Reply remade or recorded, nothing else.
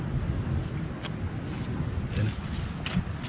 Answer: recorded